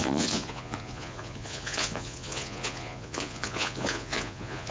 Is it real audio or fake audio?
fake